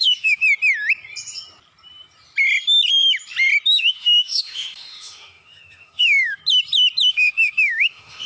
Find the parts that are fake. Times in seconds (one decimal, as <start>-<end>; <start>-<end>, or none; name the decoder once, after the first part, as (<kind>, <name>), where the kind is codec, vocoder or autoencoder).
0.0-0.4 (autoencoder, DAC-VAE); 3.7-6.4; 7.1-8.3